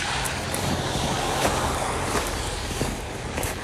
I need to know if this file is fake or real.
fake